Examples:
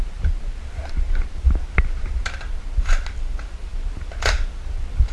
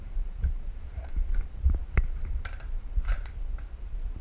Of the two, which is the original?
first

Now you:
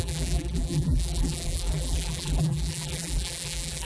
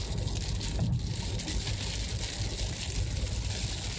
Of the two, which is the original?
second